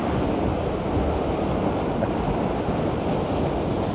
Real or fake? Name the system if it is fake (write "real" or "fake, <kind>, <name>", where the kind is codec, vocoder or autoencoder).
real